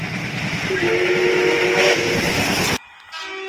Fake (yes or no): no